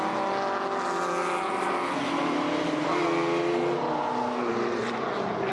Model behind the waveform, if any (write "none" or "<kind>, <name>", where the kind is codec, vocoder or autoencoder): none